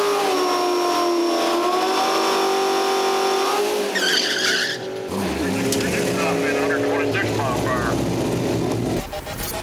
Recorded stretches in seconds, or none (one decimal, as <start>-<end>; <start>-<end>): 0.0-9.6